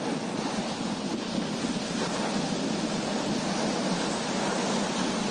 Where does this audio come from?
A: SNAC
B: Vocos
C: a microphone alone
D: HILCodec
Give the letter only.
C